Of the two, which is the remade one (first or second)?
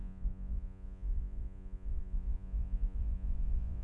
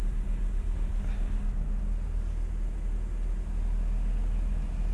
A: first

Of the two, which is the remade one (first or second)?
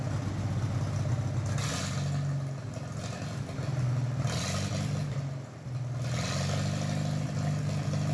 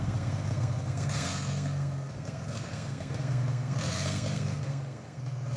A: second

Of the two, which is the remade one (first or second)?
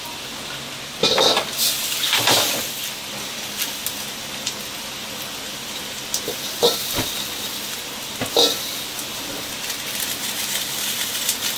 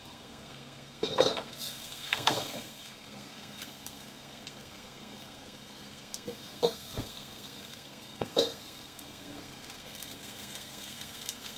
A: second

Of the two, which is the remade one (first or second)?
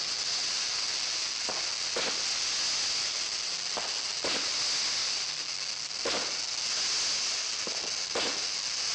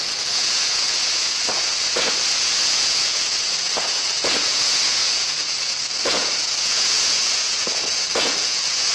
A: second